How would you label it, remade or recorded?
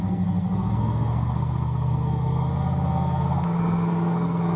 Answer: remade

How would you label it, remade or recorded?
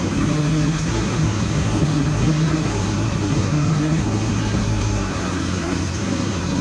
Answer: remade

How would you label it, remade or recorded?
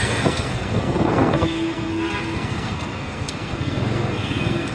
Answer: remade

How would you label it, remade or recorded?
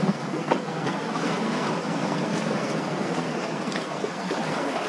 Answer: remade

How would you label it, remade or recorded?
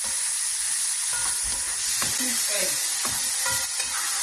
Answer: recorded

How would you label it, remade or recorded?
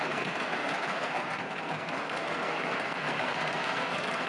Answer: remade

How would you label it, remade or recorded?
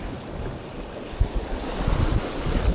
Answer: recorded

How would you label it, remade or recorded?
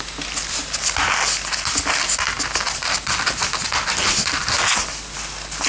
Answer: recorded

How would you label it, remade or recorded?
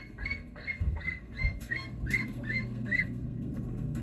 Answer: remade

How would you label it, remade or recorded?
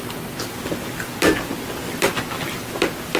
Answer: recorded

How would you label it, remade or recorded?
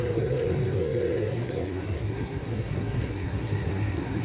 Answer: remade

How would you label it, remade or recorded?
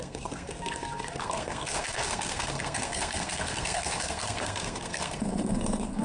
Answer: remade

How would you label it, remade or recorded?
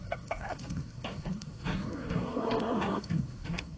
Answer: remade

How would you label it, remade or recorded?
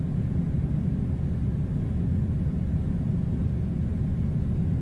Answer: recorded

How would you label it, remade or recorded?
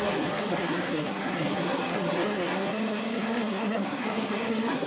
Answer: remade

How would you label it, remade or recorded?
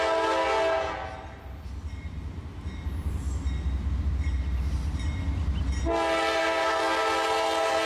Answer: recorded